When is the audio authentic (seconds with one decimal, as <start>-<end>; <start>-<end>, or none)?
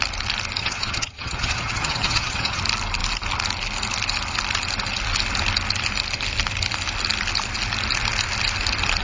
0.0-0.6; 2.6-9.0